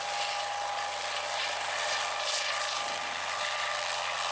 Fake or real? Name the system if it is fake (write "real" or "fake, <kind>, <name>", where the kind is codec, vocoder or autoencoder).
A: real